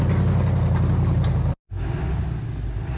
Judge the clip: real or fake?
real